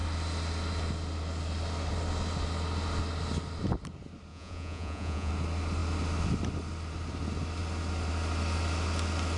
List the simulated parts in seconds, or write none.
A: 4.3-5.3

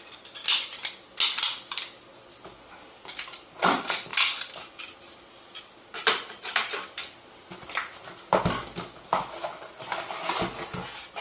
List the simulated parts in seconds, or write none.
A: none

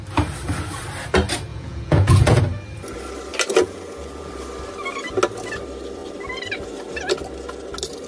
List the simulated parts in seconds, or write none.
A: 1.5-2.4; 3.6-4.3

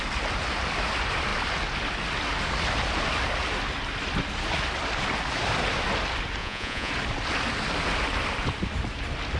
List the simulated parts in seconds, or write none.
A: 6.4-6.9

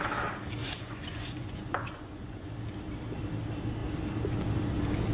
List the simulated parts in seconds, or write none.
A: 0.6-2.5

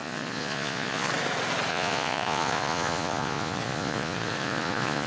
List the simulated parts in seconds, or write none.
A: 0.0-1.1; 1.7-5.1

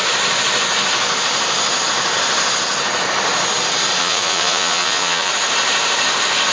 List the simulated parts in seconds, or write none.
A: 4.0-5.3